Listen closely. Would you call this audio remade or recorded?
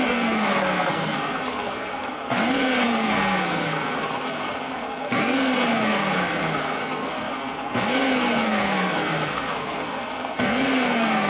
remade